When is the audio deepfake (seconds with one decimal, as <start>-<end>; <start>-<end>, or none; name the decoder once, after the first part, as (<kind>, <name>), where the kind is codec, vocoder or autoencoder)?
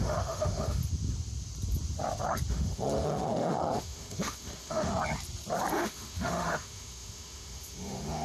0.0-0.8 (autoencoder, DAC-VAE); 2.5-4.9; 5.7-8.2